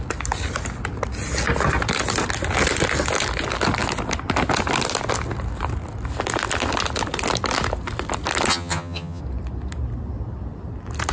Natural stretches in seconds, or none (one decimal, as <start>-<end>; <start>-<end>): 0.0-8.5; 9.2-11.1